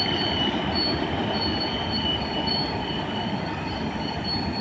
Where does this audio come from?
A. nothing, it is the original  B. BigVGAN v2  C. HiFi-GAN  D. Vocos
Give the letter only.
A